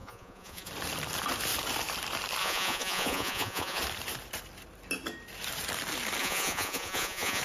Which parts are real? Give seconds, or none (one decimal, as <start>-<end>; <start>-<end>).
0.7-2.4; 3.8-6.2